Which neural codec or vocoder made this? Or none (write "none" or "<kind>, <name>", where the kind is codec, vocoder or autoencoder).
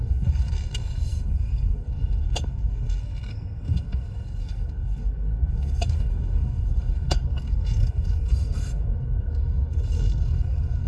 codec, SNAC